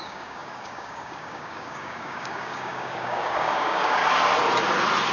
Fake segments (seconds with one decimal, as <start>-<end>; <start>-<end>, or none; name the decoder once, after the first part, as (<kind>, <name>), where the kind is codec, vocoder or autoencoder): 0.0-4.0 (codec, DAC)